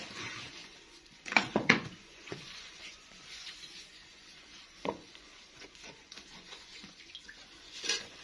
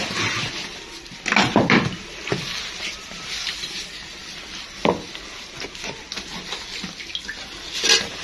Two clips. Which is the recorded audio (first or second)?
second